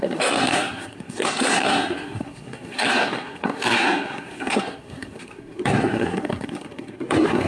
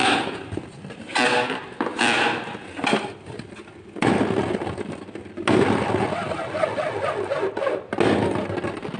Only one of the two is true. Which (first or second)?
second